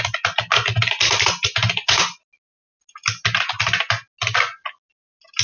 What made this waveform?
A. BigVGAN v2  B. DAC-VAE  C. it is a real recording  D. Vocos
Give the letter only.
C